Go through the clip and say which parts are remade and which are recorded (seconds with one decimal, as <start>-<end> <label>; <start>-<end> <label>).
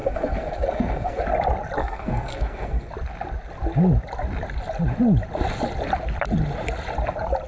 0.0-1.2 remade; 1.2-1.8 recorded; 1.8-2.9 remade; 2.9-7.5 recorded